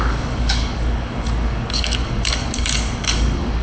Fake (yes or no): yes